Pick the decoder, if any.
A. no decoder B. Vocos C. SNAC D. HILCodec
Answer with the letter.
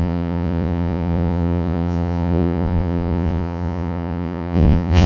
B